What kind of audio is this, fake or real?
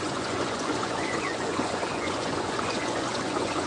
fake